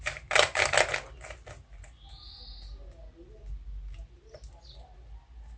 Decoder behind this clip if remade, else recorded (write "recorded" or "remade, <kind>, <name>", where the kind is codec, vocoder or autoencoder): recorded